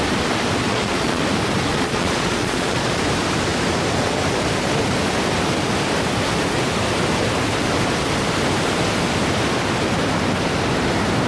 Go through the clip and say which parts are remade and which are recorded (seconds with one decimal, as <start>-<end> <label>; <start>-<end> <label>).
0.0-0.7 recorded; 0.7-1.2 remade; 1.2-1.7 recorded; 1.7-3.0 remade; 3.0-11.3 recorded